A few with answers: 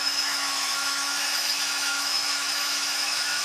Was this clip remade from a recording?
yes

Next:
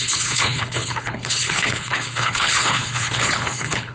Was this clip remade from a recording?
yes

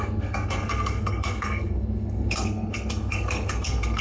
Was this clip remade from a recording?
yes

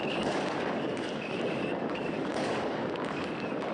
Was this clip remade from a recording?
yes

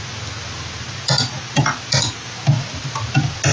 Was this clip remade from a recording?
no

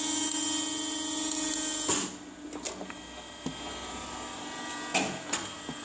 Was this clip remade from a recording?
no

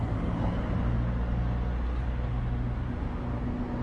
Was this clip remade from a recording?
no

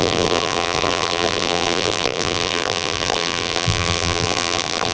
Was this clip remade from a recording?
yes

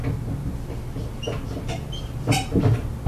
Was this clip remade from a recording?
no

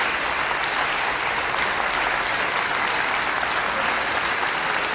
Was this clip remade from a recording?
no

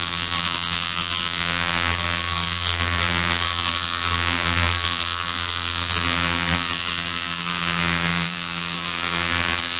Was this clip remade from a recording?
yes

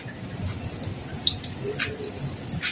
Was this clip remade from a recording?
no